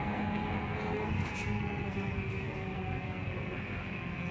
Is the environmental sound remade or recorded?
remade